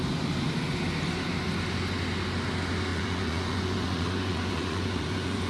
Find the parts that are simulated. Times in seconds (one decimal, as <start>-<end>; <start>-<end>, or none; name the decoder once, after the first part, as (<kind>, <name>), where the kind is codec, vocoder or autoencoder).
2.9-5.5 (vocoder, Vocos)